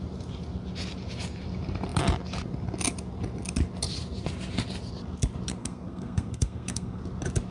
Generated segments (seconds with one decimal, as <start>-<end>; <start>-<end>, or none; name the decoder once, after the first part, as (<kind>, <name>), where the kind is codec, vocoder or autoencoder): 5.6-7.0 (codec, SNAC)